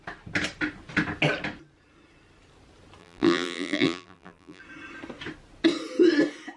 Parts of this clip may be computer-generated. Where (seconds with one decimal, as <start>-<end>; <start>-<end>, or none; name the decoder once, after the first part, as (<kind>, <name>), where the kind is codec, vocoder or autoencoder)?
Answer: 3.0-4.6 (vocoder, BigVGAN v2)